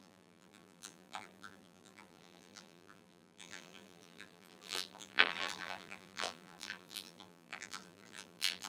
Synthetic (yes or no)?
yes